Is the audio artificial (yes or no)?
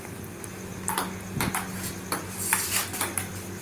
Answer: no